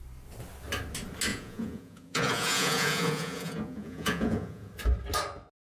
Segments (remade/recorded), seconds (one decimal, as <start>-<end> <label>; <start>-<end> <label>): 0.0-1.3 recorded; 1.3-4.7 remade; 4.7-5.6 recorded